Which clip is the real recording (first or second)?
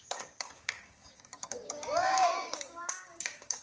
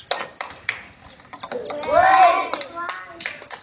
second